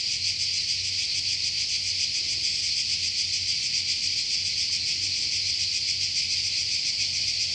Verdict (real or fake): real